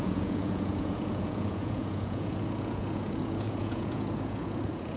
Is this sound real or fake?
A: fake